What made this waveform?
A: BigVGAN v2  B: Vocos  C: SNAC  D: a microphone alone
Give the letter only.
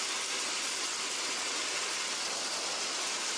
D